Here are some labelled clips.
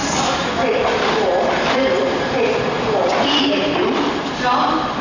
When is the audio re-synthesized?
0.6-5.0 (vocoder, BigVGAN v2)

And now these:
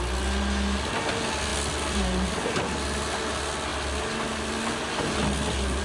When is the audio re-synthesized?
1.5-2.6 (vocoder, BigVGAN v2)

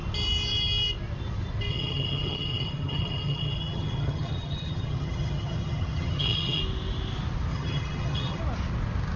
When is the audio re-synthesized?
1.7-6.6 (vocoder, HiFi-GAN); 7.5-8.4

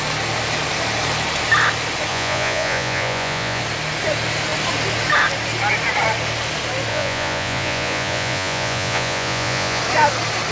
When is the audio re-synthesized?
2.1-3.6 (vocoder, Vocos); 6.9-9.8

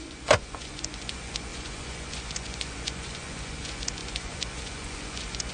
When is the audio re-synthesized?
0.0-5.5 (vocoder, Vocos)

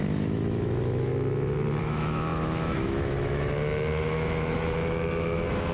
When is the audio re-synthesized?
0.0-1.1 (autoencoder, DAC-VAE); 1.8-5.7

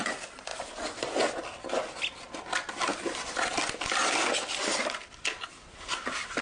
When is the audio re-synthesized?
none